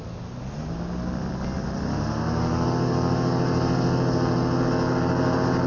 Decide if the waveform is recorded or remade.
recorded